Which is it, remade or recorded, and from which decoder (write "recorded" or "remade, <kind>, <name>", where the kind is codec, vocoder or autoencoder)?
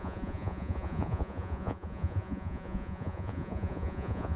remade, vocoder, Vocos